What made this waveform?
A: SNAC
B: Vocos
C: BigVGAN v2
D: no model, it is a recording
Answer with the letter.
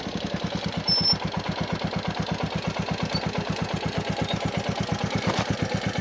D